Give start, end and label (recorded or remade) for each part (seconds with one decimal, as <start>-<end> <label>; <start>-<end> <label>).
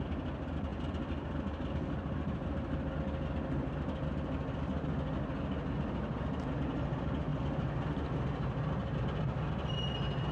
0.0-10.3 recorded